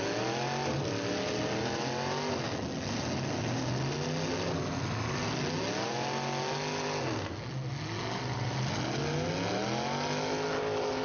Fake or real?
real